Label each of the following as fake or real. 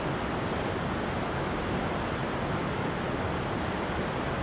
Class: real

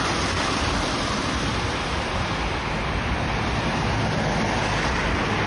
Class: real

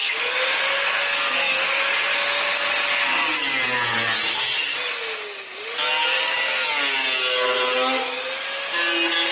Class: real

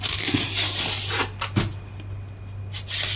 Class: real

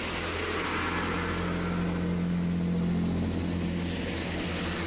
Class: real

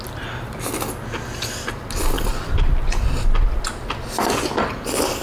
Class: real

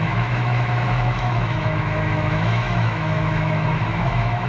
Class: fake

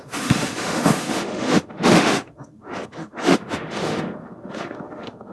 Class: fake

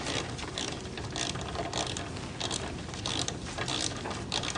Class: real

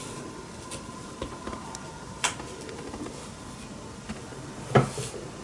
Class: real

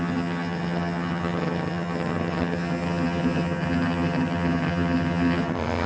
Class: fake